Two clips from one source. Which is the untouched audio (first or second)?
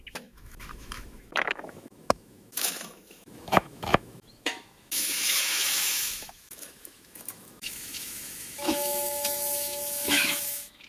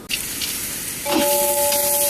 second